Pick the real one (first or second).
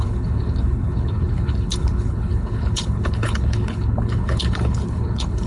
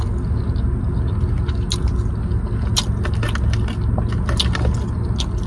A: second